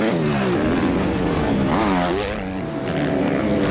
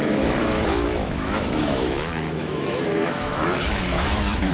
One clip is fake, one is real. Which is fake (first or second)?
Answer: second